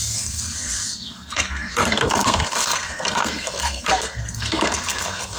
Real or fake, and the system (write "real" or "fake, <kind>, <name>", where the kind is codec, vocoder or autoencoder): fake, codec, SNAC